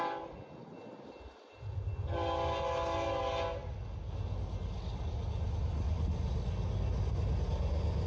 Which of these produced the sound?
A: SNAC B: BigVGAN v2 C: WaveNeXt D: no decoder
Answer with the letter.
D